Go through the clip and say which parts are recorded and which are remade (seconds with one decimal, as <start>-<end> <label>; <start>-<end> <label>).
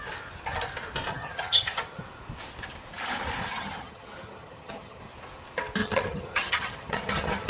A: 0.0-1.1 recorded; 1.1-2.0 remade; 2.0-3.4 recorded; 3.4-5.0 remade; 5.0-5.8 recorded; 5.8-7.5 remade